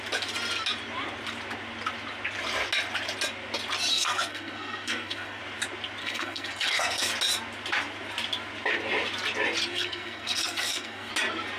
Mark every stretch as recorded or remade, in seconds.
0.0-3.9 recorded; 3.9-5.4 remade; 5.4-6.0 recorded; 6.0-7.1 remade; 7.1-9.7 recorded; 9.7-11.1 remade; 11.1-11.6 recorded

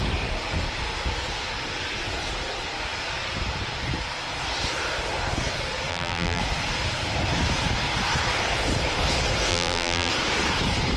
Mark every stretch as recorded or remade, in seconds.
0.0-5.9 recorded; 5.9-6.4 remade; 6.4-9.5 recorded; 9.5-10.1 remade; 10.1-11.0 recorded

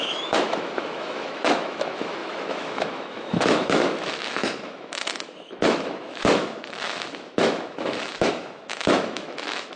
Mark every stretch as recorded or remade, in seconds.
0.0-9.8 remade

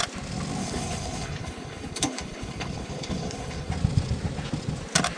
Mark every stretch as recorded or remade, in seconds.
0.0-0.6 recorded; 0.6-3.7 remade; 3.7-5.2 recorded

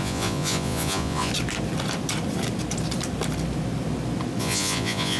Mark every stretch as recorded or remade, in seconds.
0.0-1.3 remade; 1.3-4.4 recorded; 4.4-5.2 remade